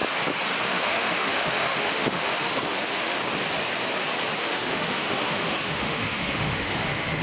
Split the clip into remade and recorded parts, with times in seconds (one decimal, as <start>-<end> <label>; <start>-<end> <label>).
0.0-0.6 recorded; 0.6-3.2 remade; 3.2-4.4 recorded; 4.4-7.2 remade